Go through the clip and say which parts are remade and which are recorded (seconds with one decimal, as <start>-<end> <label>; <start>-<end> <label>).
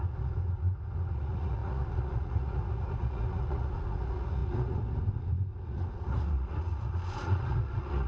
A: 0.0-8.1 remade